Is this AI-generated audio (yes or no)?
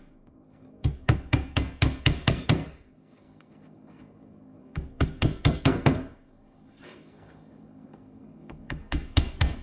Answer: yes